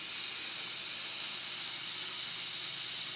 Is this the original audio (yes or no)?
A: yes